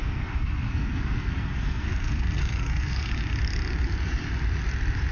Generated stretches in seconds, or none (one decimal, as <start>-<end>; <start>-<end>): 0.0-3.1